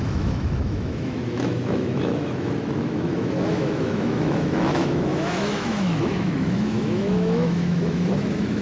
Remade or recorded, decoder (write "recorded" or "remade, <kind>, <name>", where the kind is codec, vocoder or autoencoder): remade, autoencoder, DAC-VAE